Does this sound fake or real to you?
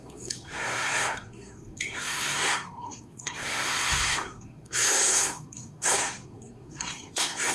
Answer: fake